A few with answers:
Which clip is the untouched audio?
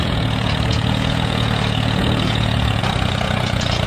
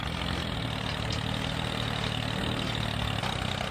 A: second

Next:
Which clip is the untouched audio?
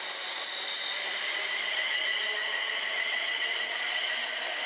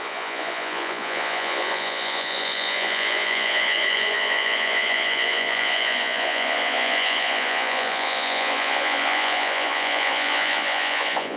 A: first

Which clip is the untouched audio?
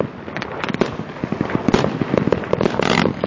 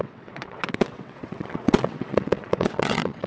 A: first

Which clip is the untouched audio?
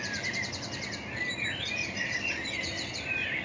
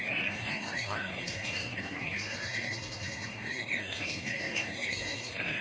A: first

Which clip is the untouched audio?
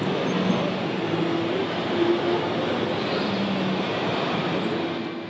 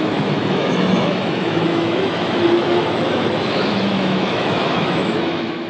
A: first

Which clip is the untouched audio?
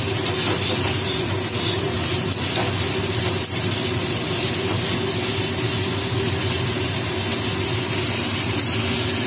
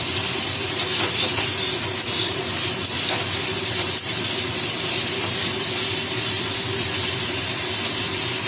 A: first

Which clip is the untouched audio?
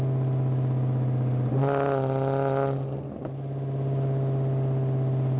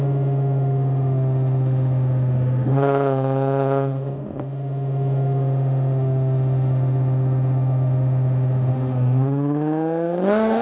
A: first